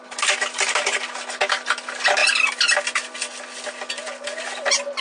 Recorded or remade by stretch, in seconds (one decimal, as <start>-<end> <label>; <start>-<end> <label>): 0.0-5.0 recorded